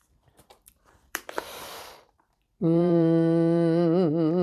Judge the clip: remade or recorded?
remade